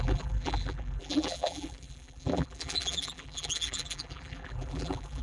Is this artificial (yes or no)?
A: yes